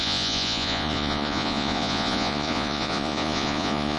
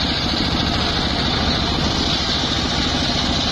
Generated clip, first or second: first